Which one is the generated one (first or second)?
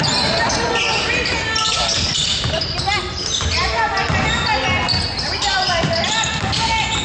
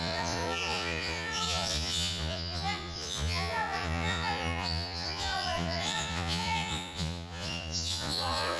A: second